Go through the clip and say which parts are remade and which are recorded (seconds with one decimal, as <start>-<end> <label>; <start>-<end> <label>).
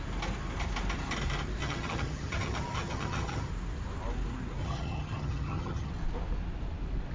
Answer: 0.0-1.6 recorded; 1.6-3.5 remade; 3.5-4.6 recorded; 4.6-5.9 remade; 5.9-7.1 recorded